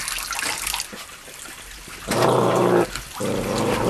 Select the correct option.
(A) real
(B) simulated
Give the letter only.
A